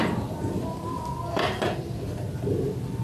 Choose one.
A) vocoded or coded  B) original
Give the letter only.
B